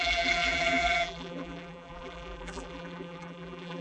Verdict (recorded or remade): remade